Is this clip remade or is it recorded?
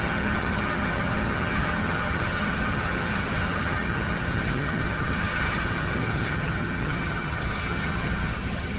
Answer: remade